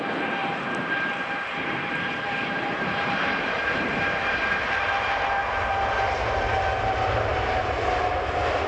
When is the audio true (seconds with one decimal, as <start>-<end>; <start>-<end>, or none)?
0.0-0.4; 4.9-8.7